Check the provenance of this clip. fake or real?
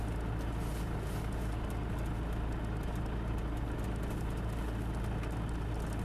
real